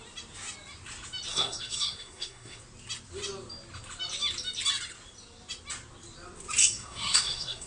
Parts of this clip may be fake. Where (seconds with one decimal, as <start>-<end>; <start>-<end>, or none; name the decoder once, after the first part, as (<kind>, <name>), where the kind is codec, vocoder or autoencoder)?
1.3-2.6 (codec, SNAC); 6.6-7.7